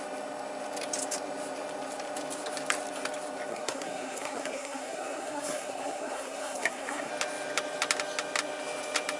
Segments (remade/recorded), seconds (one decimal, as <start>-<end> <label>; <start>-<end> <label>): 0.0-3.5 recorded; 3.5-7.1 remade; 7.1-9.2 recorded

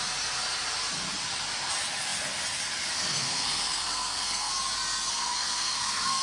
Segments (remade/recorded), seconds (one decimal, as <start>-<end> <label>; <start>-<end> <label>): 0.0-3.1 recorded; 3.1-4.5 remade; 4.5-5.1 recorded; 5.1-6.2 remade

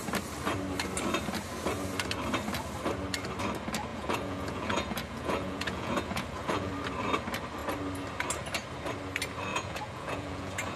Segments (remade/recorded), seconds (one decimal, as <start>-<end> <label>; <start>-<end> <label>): 0.0-3.9 recorded; 3.9-6.7 remade; 6.7-9.5 recorded; 9.5-10.8 remade